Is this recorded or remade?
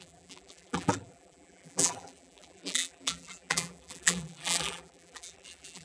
remade